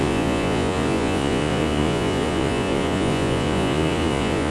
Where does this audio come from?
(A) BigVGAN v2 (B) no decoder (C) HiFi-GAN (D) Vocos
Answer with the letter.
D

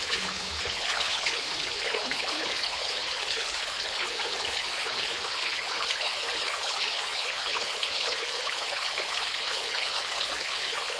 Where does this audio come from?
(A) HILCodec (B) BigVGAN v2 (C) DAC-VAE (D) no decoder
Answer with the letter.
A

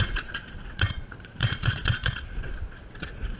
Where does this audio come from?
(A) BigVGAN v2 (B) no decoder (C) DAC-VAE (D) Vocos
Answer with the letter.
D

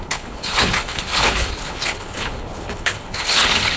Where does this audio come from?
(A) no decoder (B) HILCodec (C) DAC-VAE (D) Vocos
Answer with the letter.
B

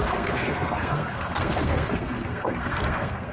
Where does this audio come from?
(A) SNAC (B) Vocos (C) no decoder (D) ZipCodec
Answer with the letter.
A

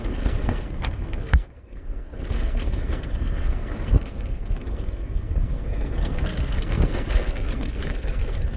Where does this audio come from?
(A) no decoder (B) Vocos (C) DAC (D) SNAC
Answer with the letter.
D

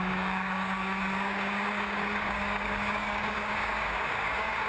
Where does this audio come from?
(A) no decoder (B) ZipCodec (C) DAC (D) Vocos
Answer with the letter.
C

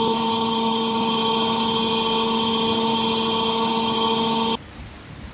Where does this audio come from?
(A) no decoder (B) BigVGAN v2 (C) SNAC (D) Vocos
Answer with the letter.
A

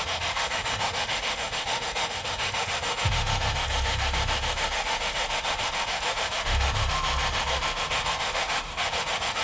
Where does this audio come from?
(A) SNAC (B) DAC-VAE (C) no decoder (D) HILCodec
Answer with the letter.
B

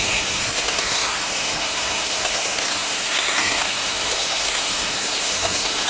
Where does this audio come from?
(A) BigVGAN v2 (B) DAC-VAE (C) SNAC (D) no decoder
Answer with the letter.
C